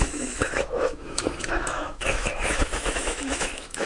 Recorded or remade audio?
remade